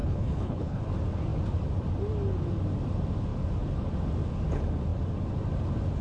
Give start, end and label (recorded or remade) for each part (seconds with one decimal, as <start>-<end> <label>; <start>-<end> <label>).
0.0-0.8 remade; 0.8-6.0 recorded